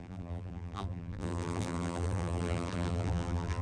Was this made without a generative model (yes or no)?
no